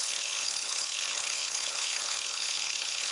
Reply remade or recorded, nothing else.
remade